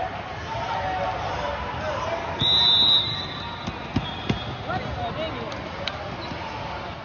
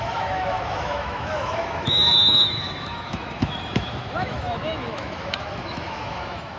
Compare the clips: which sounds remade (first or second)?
second